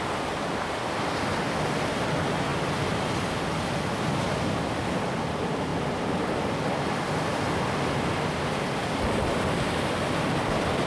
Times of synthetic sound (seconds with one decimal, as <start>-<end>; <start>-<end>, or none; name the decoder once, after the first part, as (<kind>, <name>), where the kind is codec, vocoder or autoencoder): none